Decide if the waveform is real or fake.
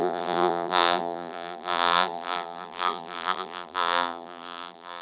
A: fake